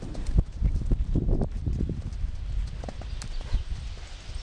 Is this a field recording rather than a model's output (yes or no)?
yes